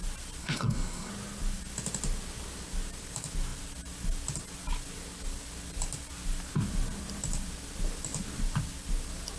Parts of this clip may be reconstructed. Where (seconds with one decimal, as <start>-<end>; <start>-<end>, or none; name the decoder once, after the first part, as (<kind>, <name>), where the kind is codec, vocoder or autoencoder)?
0.4-1.1 (codec, SNAC)